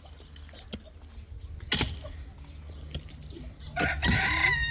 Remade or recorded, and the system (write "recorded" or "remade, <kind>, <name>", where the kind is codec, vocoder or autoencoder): recorded